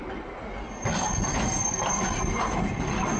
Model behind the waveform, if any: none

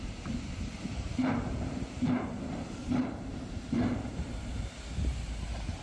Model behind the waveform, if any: vocoder, BigVGAN v2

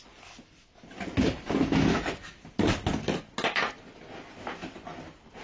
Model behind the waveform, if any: none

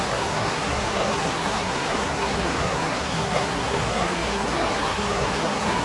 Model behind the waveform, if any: codec, SNAC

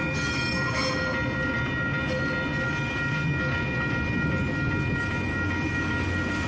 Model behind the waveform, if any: none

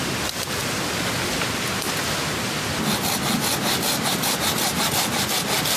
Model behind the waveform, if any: none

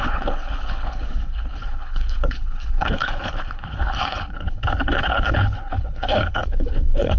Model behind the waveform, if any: codec, HILCodec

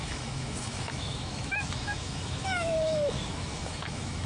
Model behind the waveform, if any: autoencoder, DAC-VAE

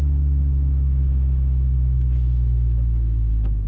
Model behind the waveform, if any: autoencoder, DAC-VAE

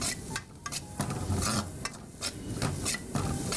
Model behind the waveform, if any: none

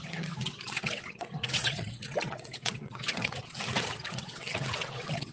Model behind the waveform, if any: vocoder, WaveNeXt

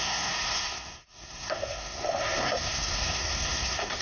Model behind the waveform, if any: codec, SNAC